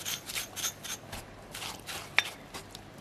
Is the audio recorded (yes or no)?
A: yes